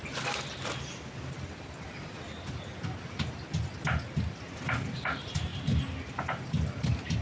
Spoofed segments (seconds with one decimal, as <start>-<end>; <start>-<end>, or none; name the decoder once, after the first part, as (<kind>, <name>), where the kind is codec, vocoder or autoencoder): none